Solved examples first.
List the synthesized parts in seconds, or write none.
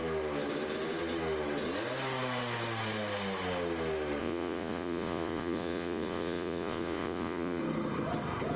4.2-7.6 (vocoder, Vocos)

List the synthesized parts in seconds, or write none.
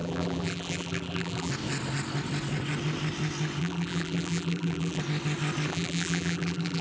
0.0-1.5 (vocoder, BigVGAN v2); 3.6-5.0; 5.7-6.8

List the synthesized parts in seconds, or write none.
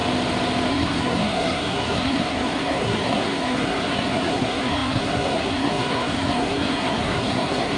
0.7-7.8 (codec, SNAC)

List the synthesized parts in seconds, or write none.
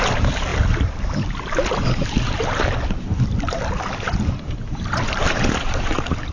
none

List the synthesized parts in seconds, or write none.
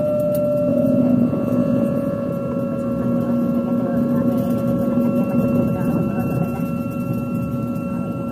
0.7-2.3 (vocoder, Vocos)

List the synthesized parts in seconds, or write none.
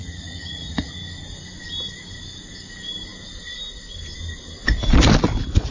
0.0-0.9 (vocoder, Vocos)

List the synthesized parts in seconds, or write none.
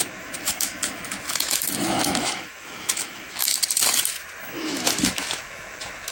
0.0-3.5 (autoencoder, DAC-VAE); 4.6-6.1